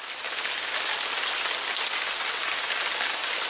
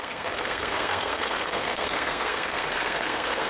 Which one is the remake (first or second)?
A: second